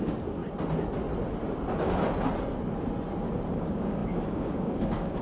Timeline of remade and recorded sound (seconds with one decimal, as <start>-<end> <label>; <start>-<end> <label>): 0.0-0.4 remade; 0.4-3.5 recorded; 3.5-5.2 remade